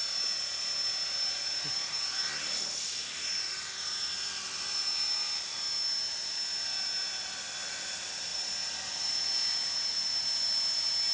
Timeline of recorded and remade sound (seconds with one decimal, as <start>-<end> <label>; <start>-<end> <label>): 0.0-11.1 recorded